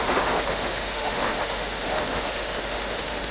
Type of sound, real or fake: fake